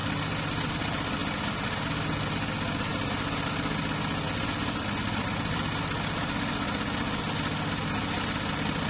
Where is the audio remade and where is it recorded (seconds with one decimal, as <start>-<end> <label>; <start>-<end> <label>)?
0.0-8.9 recorded

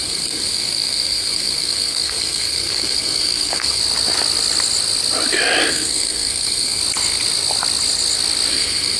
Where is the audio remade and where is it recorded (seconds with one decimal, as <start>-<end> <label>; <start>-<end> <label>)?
0.0-3.8 remade; 3.8-5.7 recorded; 5.7-6.8 remade; 6.8-8.5 recorded; 8.5-9.0 remade

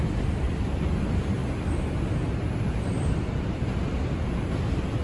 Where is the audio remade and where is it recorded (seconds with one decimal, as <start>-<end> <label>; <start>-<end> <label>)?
0.0-5.0 recorded

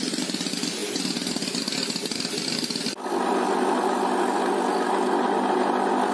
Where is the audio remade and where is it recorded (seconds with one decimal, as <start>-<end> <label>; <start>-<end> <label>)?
0.0-6.1 recorded

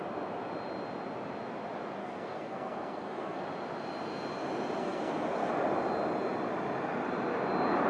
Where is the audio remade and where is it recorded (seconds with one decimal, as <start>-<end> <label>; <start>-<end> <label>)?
0.0-2.0 recorded; 2.0-3.4 remade; 3.4-4.8 recorded; 4.8-5.5 remade; 5.5-7.9 recorded

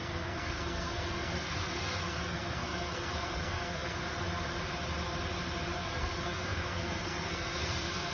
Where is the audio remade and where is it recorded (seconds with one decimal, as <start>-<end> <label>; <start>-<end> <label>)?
0.0-4.0 remade; 4.0-5.8 recorded; 5.8-8.1 remade

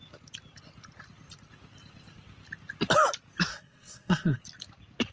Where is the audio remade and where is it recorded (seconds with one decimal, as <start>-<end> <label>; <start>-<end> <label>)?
0.0-3.5 recorded; 3.5-4.4 remade; 4.4-5.1 recorded

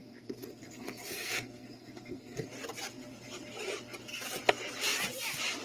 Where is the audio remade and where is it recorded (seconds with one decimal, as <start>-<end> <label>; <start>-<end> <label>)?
0.0-2.5 remade; 2.5-5.6 recorded